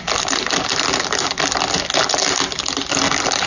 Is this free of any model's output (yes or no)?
yes